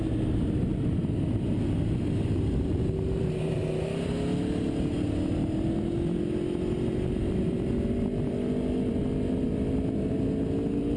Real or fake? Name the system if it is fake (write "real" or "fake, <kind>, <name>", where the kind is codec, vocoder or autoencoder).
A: real